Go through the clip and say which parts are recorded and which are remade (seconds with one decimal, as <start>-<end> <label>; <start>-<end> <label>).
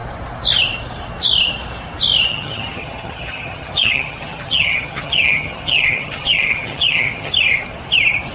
0.0-2.3 recorded; 2.3-7.3 remade; 7.3-8.3 recorded